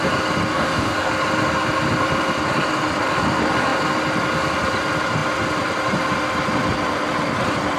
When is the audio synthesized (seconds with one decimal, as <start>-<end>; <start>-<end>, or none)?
0.5-1.1